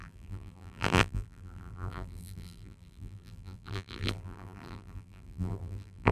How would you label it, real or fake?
fake